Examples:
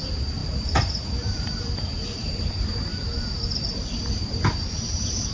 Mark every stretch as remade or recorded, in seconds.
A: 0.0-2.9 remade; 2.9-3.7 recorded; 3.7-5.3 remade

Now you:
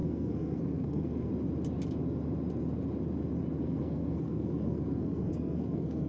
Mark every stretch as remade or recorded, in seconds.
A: 0.0-1.3 remade; 1.3-3.6 recorded; 3.6-6.1 remade